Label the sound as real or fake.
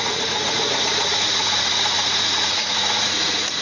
fake